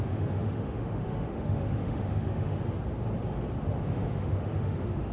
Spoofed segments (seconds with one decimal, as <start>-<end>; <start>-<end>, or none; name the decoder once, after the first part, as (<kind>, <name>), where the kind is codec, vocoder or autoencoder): 0.0-2.5 (autoencoder, DAC-VAE); 3.8-5.1